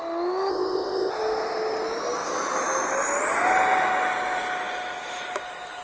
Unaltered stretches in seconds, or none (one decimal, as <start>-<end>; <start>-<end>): 0.0-0.5; 1.1-5.8